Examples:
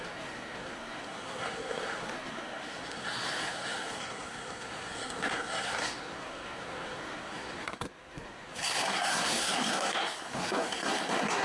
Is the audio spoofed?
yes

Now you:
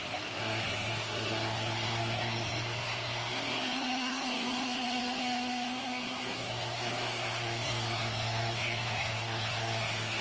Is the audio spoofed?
yes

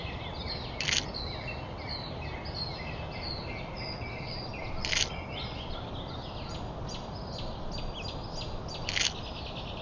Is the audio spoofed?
no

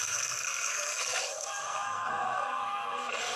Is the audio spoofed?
yes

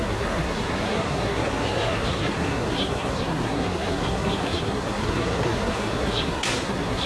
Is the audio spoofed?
yes